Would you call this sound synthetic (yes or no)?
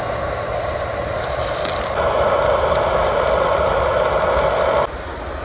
no